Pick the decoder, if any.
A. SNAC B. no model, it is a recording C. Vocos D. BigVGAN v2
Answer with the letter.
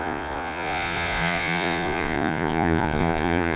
C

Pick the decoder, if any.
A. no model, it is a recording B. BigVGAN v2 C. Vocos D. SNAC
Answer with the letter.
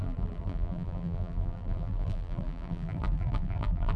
B